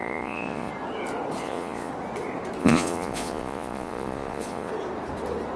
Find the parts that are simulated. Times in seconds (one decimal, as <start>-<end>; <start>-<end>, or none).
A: 0.0-0.7; 1.4-1.9; 2.6-4.7